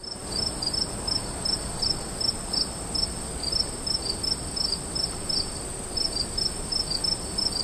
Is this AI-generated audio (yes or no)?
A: no